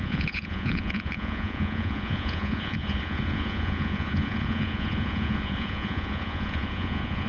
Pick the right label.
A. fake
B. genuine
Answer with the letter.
A